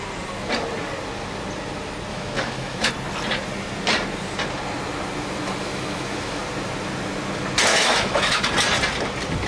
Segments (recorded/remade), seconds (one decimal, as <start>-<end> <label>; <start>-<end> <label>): 0.0-2.1 recorded; 2.1-2.9 remade; 2.9-5.6 recorded; 5.6-6.4 remade; 6.4-7.7 recorded; 7.7-8.4 remade; 8.4-9.5 recorded